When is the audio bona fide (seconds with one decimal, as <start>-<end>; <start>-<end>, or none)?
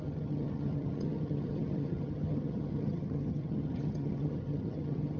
none